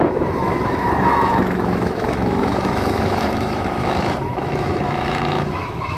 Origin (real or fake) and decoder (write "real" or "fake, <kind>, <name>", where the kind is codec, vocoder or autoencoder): fake, autoencoder, DAC-VAE